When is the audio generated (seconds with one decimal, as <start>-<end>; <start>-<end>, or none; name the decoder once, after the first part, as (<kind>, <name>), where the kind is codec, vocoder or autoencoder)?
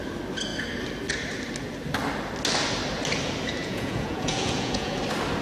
3.6-5.0 (vocoder, Vocos)